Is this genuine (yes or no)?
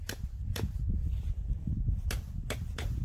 yes